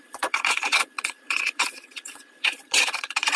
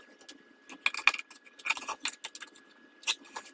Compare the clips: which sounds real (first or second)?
second